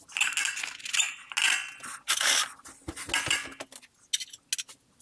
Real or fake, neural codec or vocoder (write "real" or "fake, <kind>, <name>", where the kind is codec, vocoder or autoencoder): real